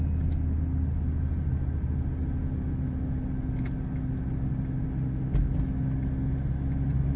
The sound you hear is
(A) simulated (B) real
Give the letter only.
B